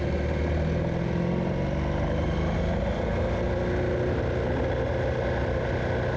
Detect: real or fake real